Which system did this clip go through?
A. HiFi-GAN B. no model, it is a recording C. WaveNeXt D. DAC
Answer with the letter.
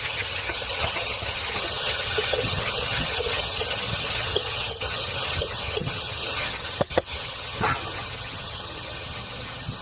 A